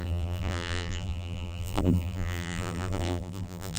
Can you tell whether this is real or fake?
fake